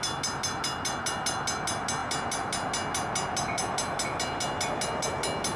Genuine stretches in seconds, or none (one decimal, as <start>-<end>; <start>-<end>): 0.0-5.6